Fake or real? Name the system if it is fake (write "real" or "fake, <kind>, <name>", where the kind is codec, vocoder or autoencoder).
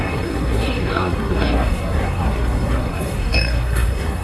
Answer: fake, codec, SNAC